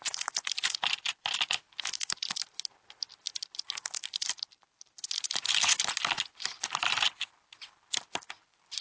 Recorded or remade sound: recorded